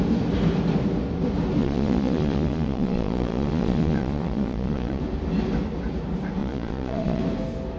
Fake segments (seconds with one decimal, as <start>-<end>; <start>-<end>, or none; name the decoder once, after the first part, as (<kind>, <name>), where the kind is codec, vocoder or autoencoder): 1.6-5.0 (vocoder, Vocos); 6.4-7.2